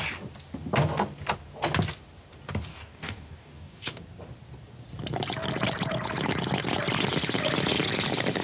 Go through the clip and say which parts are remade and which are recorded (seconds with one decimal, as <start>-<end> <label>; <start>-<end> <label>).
0.0-2.7 recorded; 2.7-4.0 remade; 4.0-8.4 recorded